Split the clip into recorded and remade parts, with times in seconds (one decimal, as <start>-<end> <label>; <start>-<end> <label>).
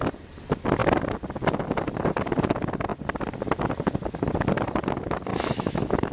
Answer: 0.0-5.3 recorded; 5.3-6.1 remade